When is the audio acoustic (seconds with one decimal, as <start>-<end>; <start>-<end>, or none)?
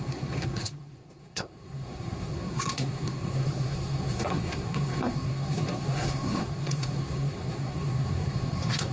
none